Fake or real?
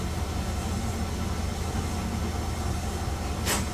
real